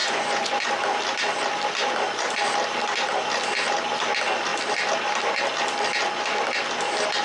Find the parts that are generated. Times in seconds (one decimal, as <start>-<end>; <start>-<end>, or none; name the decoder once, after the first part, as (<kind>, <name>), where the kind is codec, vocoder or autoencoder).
0.0-0.7 (vocoder, Vocos)